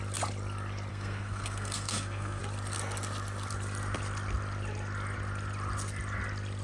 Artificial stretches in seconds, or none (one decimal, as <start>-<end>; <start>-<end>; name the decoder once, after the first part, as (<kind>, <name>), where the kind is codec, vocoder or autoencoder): 0.9-2.4 (codec, SNAC)